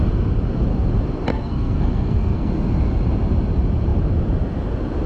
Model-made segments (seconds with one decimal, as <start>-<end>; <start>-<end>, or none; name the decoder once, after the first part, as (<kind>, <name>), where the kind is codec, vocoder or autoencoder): 1.3-2.5 (codec, SNAC)